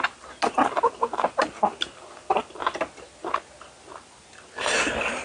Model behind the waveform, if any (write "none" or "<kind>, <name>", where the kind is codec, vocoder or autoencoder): none